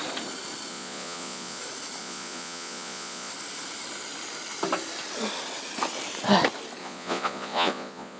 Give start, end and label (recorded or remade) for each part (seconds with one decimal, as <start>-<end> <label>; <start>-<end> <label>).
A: 0.0-0.7 recorded; 0.7-1.6 remade; 1.6-2.0 recorded; 2.0-3.3 remade; 3.3-6.8 recorded; 6.8-8.2 remade